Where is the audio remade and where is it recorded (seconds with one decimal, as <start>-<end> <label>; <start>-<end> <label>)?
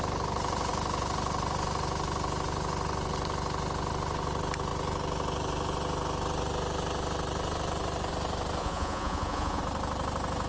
0.0-8.6 recorded; 8.6-9.6 remade; 9.6-10.5 recorded